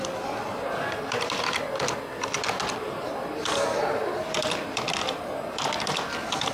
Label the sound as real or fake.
fake